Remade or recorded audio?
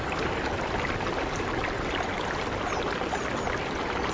recorded